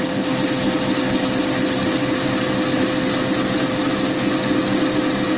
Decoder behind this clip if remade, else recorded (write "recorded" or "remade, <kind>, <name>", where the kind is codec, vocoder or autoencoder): recorded